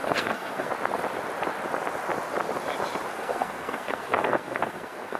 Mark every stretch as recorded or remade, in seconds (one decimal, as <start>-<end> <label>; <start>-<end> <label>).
0.0-0.7 remade; 0.7-3.1 recorded; 3.1-5.2 remade